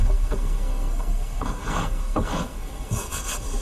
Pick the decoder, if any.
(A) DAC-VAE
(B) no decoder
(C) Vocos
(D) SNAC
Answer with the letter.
D